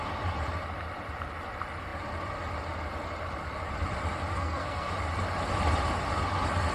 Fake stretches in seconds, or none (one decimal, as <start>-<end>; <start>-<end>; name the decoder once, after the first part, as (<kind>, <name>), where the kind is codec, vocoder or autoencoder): 4.3-4.9 (codec, SNAC)